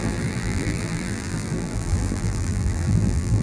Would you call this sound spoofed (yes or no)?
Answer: yes